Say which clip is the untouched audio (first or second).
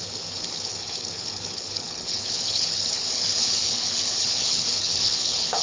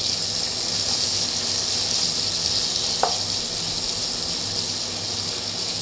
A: second